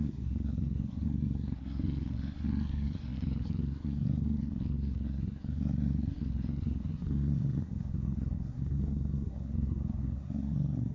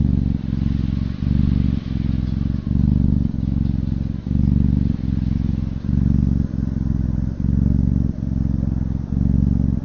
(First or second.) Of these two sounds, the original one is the second